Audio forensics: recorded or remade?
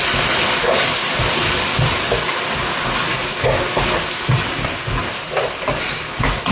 recorded